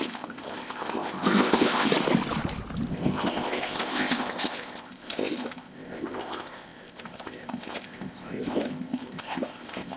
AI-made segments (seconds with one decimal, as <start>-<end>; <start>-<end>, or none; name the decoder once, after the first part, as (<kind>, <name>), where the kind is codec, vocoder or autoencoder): 0.0-1.9 (codec, ZipCodec); 2.9-10.0